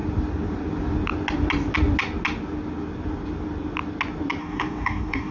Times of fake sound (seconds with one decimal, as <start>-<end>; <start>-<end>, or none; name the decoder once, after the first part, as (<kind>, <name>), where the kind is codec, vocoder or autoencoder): 4.4-5.3 (codec, DAC)